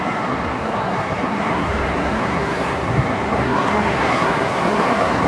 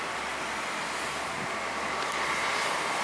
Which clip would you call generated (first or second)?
first